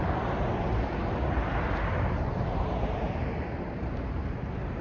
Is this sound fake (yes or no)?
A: yes